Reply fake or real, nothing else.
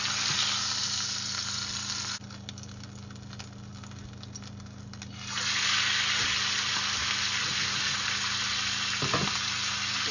real